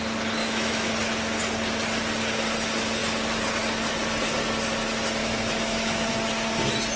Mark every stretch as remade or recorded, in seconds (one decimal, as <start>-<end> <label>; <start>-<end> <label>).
0.0-0.4 recorded; 0.4-0.9 remade; 0.9-5.2 recorded; 5.2-6.1 remade; 6.1-7.0 recorded

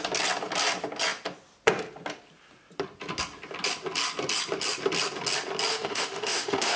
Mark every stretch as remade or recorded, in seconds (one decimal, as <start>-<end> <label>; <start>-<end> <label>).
0.0-5.7 recorded; 5.7-6.8 remade

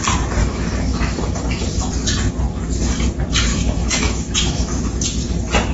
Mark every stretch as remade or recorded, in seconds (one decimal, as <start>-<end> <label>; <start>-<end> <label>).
0.0-0.4 recorded; 0.4-1.9 remade; 1.9-3.5 recorded; 3.5-4.8 remade; 4.8-5.7 recorded

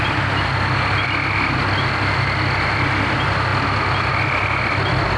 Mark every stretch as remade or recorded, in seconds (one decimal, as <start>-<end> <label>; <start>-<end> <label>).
0.0-5.2 recorded